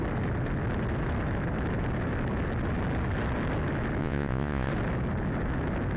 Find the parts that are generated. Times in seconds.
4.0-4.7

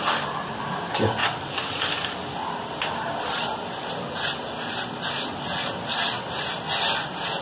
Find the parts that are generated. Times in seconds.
1.2-3.9

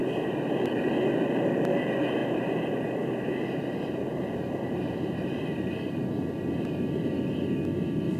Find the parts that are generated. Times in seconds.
0.0-0.9; 2.2-6.1

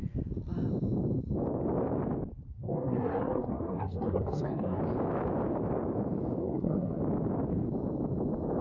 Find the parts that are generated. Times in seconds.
2.5-4.8; 6.4-7.0

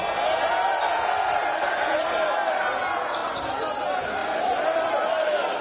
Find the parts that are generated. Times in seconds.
1.4-2.0; 4.2-5.6

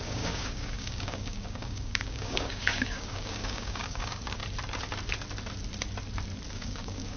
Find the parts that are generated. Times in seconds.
0.0-4.4; 6.5-7.2

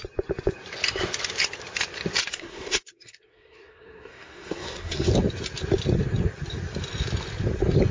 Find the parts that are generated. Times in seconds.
2.3-5.1

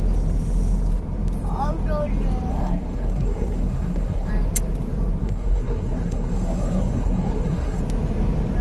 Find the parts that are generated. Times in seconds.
2.5-4.3; 5.2-7.8